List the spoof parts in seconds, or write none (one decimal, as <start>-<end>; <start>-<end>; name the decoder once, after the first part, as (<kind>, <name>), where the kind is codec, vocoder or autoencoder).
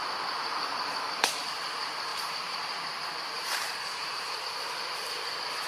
2.1-4.4 (vocoder, BigVGAN v2)